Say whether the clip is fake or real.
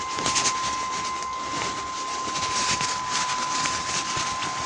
real